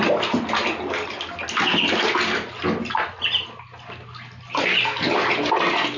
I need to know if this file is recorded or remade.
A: recorded